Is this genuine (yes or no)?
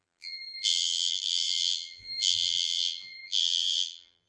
no